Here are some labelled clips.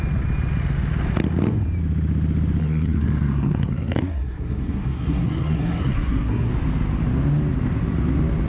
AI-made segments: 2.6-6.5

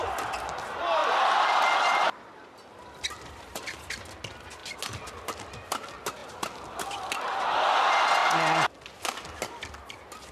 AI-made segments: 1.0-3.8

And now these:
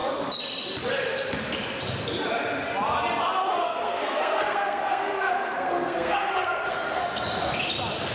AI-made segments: 3.6-7.0